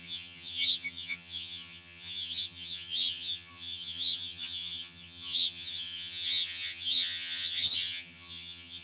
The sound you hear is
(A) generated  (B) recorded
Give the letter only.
A